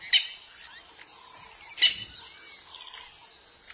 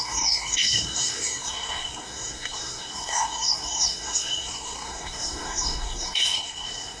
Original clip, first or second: first